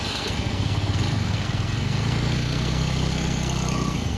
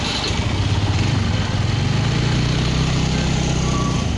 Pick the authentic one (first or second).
second